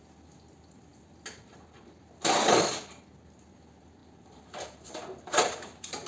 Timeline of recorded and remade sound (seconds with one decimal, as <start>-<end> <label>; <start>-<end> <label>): 0.0-4.0 recorded; 4.0-6.1 remade